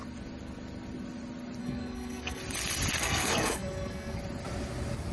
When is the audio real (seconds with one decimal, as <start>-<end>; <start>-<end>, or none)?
0.0-1.6; 2.4-3.0; 4.2-5.1